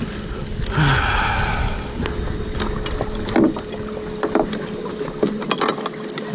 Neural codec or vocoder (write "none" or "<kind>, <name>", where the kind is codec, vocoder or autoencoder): none